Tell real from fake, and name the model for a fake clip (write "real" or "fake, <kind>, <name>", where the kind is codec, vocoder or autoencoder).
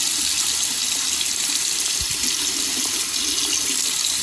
real